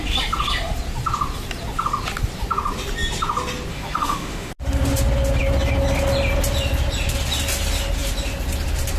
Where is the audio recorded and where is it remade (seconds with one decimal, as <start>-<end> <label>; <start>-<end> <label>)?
0.0-3.7 recorded; 3.7-4.5 remade; 4.5-9.0 recorded